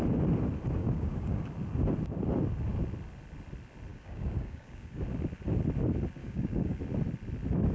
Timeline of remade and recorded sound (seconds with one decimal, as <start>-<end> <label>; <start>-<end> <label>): 0.0-0.8 recorded; 0.8-1.4 remade; 1.4-3.9 recorded; 3.9-5.0 remade; 5.0-6.2 recorded; 6.2-6.8 remade; 6.8-7.7 recorded